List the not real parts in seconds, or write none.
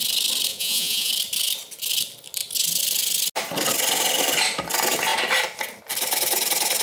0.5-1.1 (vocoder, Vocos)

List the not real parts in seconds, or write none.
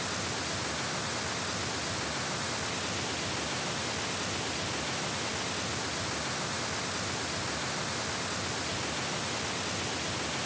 none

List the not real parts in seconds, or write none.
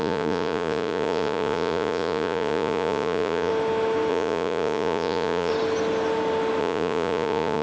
0.0-3.5 (vocoder, Vocos); 4.1-5.5; 6.6-7.6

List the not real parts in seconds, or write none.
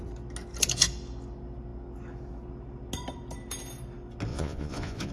4.3-5.1 (vocoder, Vocos)